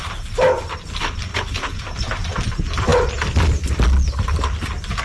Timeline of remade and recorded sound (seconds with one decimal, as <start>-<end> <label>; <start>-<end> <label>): 0.0-1.3 recorded; 1.3-1.8 remade; 1.8-5.0 recorded